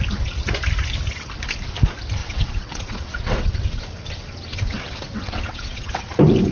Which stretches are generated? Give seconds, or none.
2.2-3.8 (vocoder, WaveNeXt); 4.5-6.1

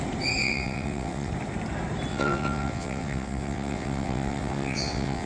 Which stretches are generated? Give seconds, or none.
0.4-1.3 (vocoder, WaveNeXt); 2.1-5.3

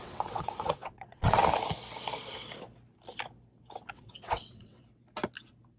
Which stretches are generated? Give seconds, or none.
0.0-1.4 (vocoder, WaveNeXt); 3.9-4.8